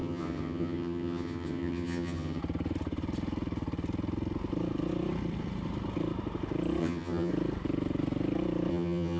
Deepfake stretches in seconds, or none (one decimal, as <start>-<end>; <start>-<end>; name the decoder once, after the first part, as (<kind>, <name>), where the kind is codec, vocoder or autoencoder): 0.0-2.4 (vocoder, HiFi-GAN); 6.8-7.3; 8.7-9.2